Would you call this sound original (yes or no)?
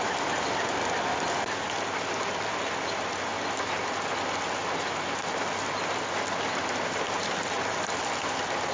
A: yes